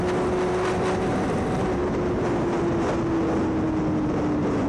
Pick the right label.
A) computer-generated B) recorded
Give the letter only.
B